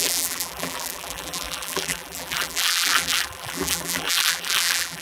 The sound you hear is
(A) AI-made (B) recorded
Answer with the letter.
A